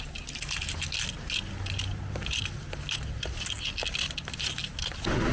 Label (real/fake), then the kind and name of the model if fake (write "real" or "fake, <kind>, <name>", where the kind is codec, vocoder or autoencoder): real